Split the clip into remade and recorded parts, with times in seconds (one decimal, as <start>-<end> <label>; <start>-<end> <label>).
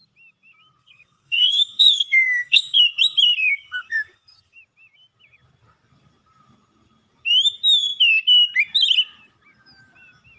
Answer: 0.0-0.8 recorded; 0.8-2.8 remade; 2.8-3.4 recorded; 3.4-4.6 remade; 4.6-10.4 recorded